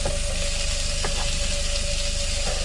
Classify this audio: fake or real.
real